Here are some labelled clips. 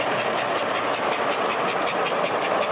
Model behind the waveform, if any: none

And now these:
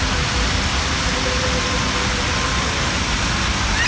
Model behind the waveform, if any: none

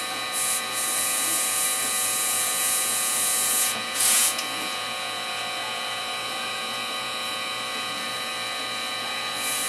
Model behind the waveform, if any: vocoder, Vocos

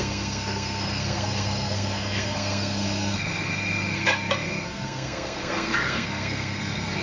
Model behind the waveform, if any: codec, SNAC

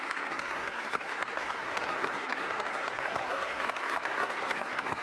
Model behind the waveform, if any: codec, SNAC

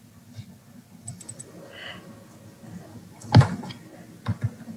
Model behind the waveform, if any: none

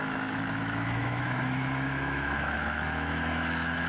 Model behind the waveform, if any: autoencoder, DAC-VAE